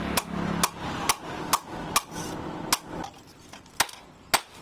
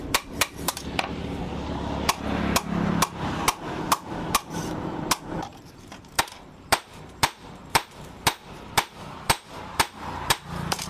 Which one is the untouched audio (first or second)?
first